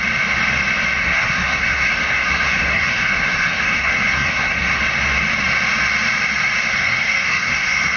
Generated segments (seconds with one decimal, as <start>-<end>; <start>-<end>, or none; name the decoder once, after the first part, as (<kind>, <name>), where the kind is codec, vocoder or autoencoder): 1.0-4.8 (codec, SNAC); 6.7-8.0